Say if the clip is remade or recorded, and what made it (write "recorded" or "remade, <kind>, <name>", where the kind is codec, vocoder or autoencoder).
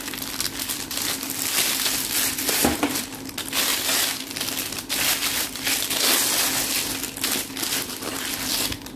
recorded